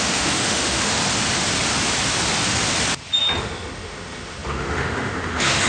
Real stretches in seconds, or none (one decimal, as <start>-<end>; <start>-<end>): 1.0-3.4